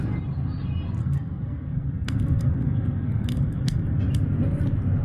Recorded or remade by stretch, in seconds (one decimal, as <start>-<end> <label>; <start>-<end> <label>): 0.0-1.0 recorded; 1.0-4.0 remade; 4.0-5.0 recorded